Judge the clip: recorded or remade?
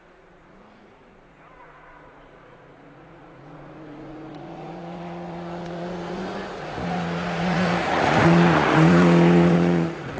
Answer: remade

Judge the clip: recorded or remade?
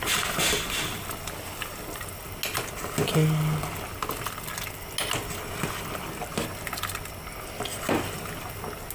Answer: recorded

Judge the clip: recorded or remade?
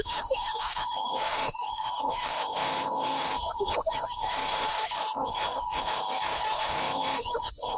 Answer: remade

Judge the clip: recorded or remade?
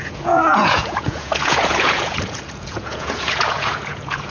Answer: remade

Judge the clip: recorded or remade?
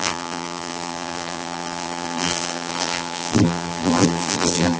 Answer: remade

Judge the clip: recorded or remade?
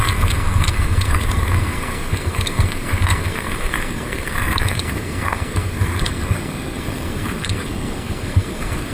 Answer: remade